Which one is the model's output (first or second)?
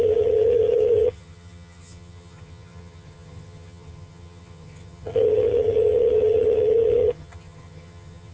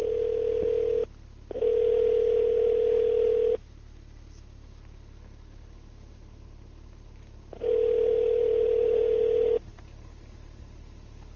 first